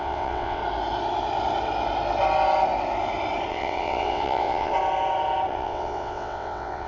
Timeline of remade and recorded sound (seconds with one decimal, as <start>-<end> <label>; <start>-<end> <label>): 0.0-0.6 remade; 0.6-3.5 recorded; 3.5-4.7 remade; 4.7-5.5 recorded; 5.5-6.9 remade